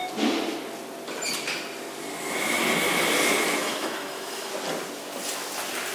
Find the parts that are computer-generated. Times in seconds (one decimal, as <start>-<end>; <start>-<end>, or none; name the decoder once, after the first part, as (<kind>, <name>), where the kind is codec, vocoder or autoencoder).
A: 3.6-4.5 (autoencoder, DAC-VAE)